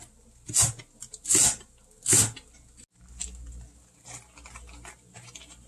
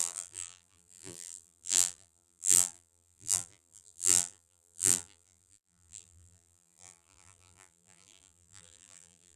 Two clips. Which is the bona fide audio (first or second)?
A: first